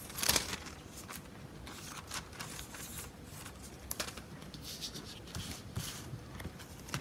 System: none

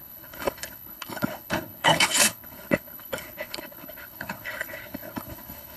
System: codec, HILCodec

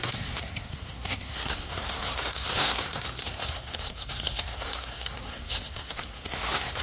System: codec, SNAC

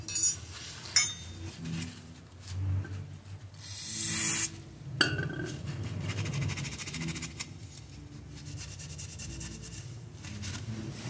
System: none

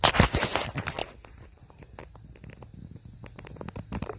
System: none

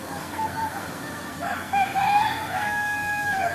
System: codec, SNAC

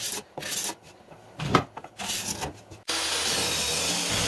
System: none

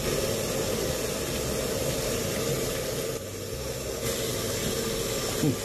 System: none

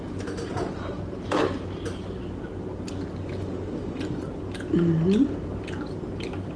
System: none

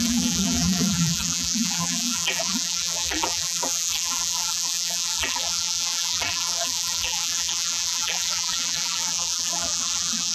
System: vocoder, BigVGAN v2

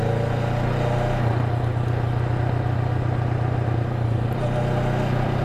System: none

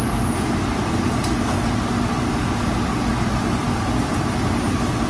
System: none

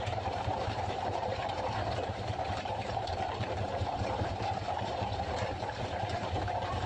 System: vocoder, BigVGAN v2